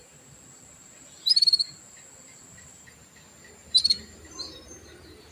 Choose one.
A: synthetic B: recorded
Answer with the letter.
A